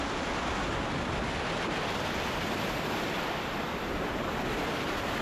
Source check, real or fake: real